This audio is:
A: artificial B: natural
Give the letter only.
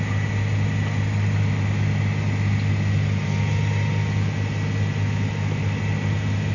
B